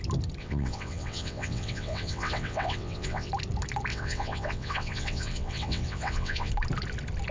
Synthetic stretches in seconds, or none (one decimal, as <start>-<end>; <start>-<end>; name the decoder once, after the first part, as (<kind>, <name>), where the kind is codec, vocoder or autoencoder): 0.4-3.3 (vocoder, WaveNeXt); 3.9-6.5

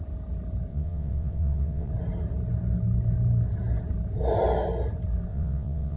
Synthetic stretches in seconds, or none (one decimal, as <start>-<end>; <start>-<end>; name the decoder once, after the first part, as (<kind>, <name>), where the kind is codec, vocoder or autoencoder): 0.7-1.9 (vocoder, WaveNeXt); 5.3-6.0

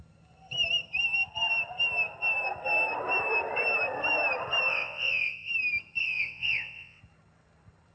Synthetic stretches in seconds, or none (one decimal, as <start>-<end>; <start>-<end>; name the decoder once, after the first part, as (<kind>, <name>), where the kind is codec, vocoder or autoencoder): 4.7-5.5 (vocoder, WaveNeXt); 6.0-7.0